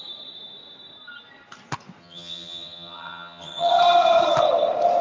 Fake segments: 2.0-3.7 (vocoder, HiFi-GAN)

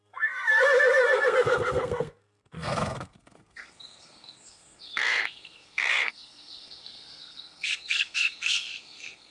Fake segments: 0.0-9.3 (codec, SNAC)

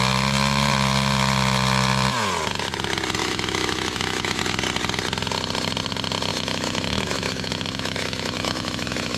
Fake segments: 3.2-4.4 (autoencoder, DAC-VAE); 6.3-9.2